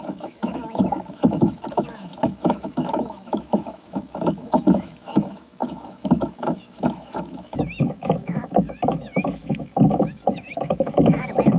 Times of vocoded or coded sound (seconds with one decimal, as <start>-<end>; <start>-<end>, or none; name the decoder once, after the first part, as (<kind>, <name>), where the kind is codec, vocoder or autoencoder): 0.0-11.6 (autoencoder, DAC-VAE)